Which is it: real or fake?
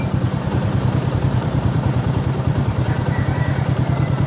fake